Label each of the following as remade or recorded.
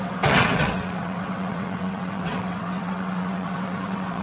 remade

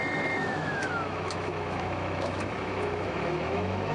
remade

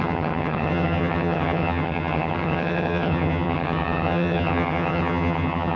remade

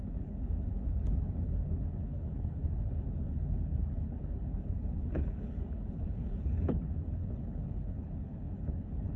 remade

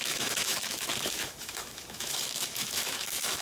remade